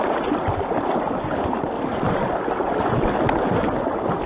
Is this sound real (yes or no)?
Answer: yes